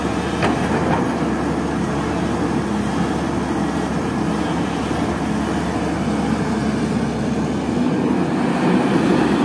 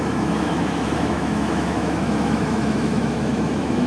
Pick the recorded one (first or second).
first